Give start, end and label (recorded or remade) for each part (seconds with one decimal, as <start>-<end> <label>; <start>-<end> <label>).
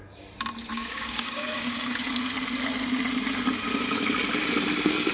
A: 0.0-0.7 recorded; 0.7-2.0 remade; 2.0-5.1 recorded